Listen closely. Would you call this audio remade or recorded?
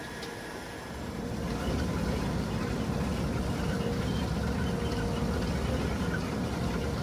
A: recorded